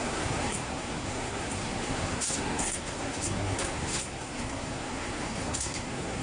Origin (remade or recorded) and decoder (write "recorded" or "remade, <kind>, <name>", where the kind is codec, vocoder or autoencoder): remade, codec, SNAC